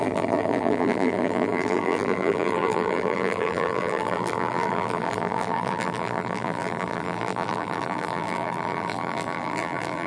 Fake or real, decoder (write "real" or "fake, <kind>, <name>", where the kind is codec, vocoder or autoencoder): fake, vocoder, BigVGAN v2